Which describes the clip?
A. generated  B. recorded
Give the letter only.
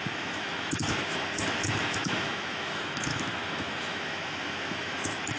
A